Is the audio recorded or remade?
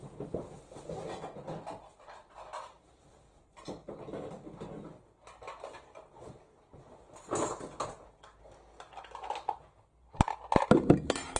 recorded